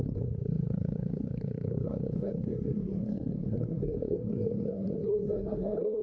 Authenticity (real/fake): fake